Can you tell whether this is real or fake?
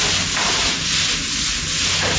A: real